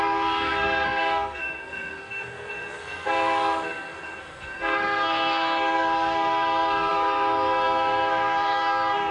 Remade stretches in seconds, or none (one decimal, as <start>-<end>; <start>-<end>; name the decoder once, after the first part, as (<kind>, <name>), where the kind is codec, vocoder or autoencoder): 0.0-9.1 (codec, SNAC)